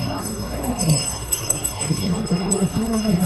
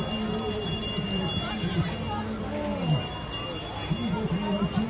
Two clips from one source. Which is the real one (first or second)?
second